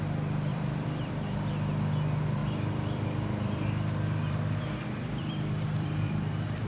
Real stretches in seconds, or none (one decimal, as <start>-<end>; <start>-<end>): 0.0-0.5; 1.1-2.4